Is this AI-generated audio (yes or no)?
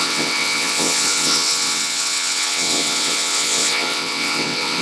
yes